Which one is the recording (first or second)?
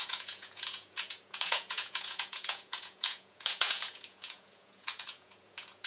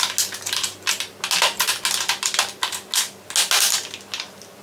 second